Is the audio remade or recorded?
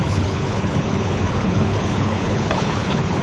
remade